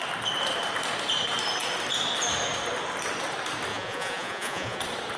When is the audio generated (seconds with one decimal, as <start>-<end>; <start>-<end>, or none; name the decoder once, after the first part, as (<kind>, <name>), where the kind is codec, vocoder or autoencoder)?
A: 3.7-4.8 (vocoder, Vocos)